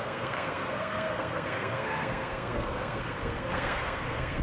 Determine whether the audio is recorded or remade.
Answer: remade